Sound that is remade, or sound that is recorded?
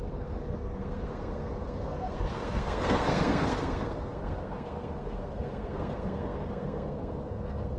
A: remade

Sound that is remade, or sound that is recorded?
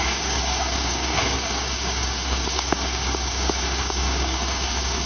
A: remade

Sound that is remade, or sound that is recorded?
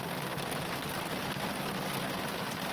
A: recorded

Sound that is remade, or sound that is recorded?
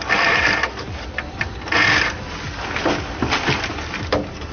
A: recorded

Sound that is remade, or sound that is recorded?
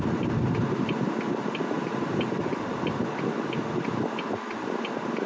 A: recorded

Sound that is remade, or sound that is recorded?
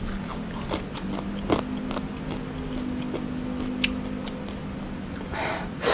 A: recorded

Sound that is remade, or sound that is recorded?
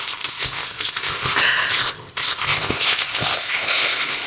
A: remade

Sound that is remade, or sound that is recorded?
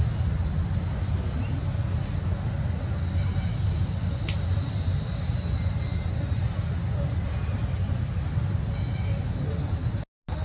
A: recorded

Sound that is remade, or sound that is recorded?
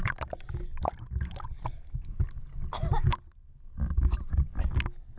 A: recorded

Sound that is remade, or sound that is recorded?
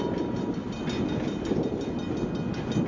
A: recorded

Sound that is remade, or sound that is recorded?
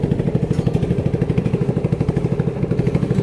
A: recorded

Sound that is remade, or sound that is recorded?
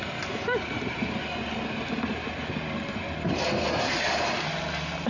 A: recorded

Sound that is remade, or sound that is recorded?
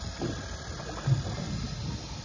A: recorded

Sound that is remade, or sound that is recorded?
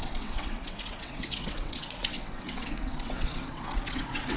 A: remade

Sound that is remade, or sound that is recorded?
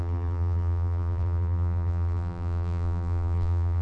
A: remade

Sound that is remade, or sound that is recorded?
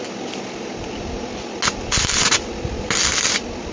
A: recorded